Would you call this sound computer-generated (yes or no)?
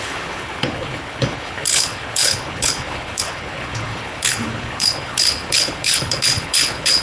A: yes